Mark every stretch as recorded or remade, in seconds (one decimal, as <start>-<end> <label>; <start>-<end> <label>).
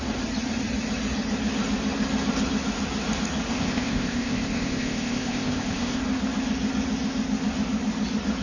0.0-3.5 recorded; 3.5-6.0 remade; 6.0-8.4 recorded